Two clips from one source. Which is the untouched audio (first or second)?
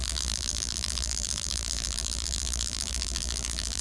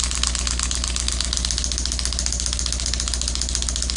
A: second